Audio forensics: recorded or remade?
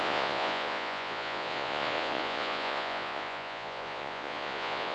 remade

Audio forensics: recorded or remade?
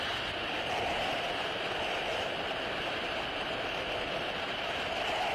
recorded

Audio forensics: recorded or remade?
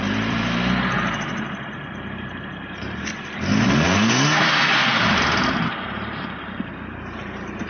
remade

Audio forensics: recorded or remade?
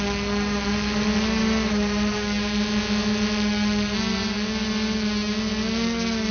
recorded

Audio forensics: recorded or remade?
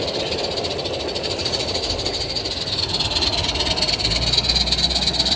recorded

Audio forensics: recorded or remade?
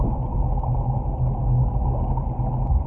recorded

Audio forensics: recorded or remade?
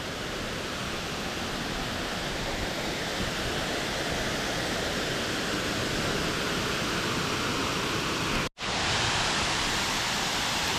recorded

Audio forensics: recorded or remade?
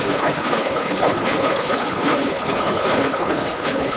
remade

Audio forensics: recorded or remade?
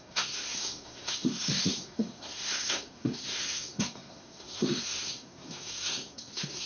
remade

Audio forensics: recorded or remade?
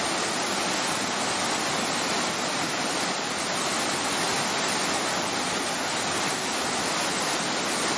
recorded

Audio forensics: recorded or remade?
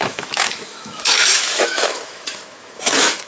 remade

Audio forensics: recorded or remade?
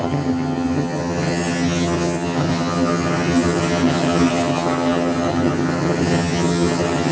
remade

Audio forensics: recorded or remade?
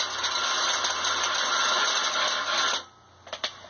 recorded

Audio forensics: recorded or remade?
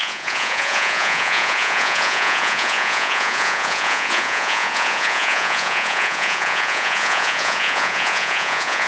remade